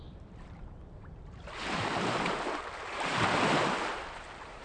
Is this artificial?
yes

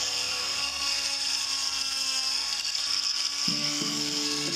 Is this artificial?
yes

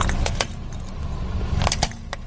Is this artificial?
no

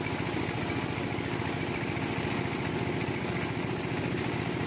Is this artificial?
no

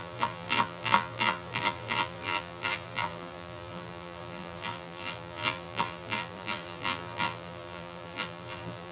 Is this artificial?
yes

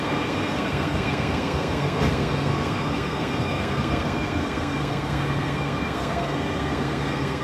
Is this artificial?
yes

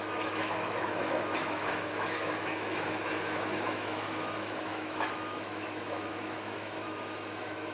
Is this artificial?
yes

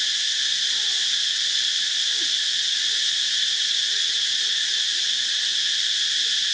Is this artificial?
no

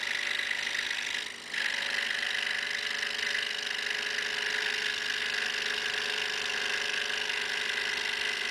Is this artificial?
no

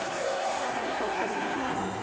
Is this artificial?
yes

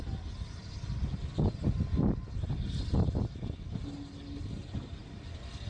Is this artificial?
no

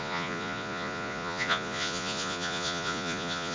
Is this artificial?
yes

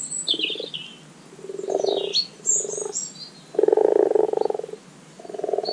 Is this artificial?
no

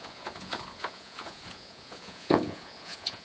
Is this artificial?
yes